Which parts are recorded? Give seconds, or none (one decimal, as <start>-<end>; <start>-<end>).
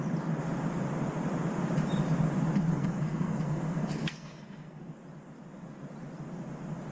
0.0-2.7; 4.9-6.9